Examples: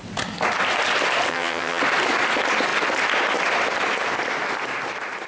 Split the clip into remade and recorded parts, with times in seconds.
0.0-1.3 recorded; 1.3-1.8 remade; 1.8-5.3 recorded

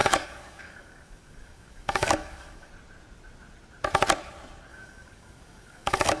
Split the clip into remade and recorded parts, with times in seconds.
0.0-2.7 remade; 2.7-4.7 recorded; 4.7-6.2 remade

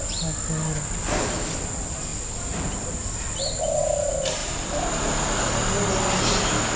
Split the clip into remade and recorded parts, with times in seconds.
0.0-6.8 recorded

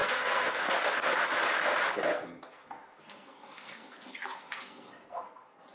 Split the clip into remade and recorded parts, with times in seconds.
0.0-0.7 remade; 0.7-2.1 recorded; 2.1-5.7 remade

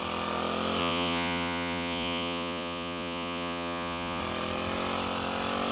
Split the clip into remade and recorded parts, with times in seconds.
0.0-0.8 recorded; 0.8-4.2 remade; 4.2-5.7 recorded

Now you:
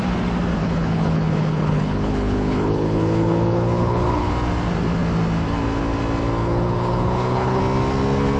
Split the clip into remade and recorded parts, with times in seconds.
0.0-0.6 recorded; 0.6-4.3 remade; 4.3-6.4 recorded; 6.4-7.6 remade; 7.6-8.4 recorded